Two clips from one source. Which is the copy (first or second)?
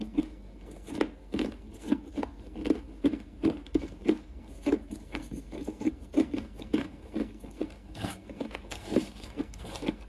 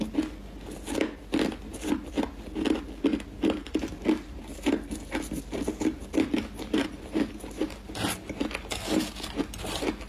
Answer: first